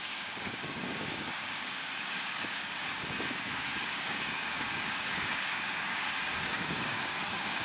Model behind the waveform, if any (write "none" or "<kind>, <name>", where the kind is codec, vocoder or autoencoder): codec, DAC